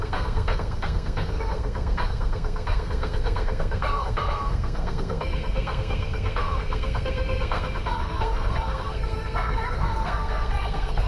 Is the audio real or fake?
fake